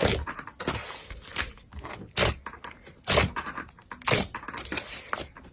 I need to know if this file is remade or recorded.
recorded